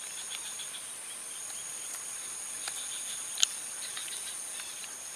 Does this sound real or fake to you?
real